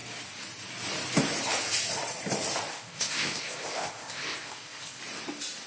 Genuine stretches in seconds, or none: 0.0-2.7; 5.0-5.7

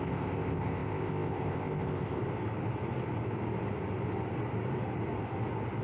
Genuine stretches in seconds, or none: 2.2-5.8

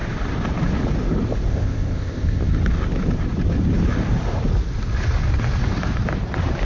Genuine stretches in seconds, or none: 0.0-1.5; 2.5-6.6

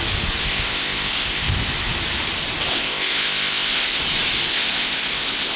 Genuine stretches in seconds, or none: 0.0-0.4; 1.7-2.7; 4.0-4.5

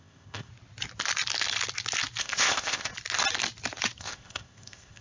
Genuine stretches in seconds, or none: 0.5-2.2; 2.9-4.0

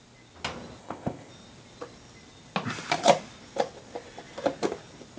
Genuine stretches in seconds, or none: 0.0-0.8; 1.3-5.2

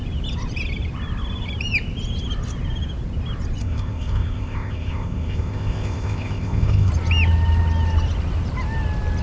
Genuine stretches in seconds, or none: 0.0-3.6; 6.9-9.2